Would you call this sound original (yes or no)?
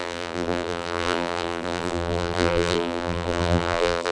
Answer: no